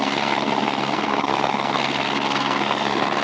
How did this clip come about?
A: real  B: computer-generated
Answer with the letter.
B